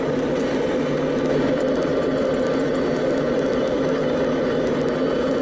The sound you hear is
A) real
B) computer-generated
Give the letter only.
A